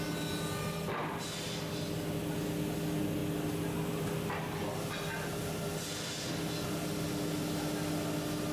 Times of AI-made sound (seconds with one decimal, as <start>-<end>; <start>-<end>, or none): none

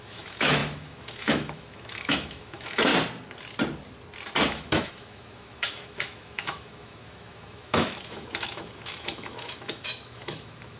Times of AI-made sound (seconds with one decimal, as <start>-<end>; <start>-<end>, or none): 0.0-2.9; 4.5-10.8

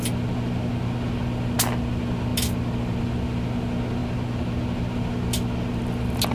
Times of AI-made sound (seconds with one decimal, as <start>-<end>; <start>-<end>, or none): none

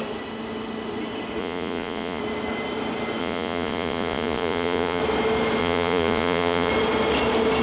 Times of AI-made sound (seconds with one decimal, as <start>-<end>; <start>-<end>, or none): 1.4-2.2; 3.2-5.0; 5.6-6.7

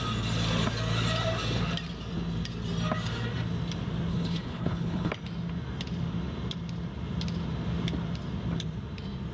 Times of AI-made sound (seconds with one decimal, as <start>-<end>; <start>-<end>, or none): 4.1-5.1